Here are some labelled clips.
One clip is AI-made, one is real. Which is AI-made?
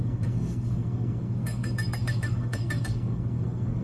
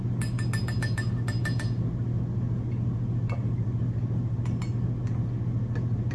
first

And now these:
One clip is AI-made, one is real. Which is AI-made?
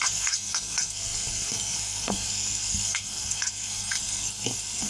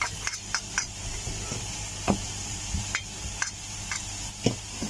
first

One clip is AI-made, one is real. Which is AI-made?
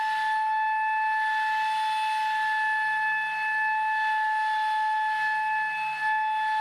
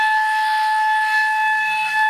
second